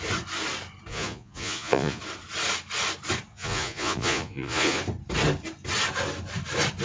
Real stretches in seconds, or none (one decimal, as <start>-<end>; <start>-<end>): 0.0-0.9; 2.0-3.3; 4.8-6.8